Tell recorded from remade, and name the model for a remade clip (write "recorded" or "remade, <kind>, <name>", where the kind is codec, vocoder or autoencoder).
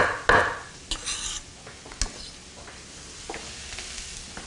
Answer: recorded